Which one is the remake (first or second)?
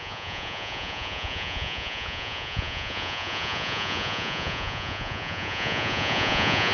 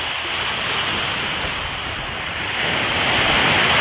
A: first